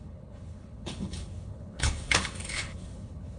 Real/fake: fake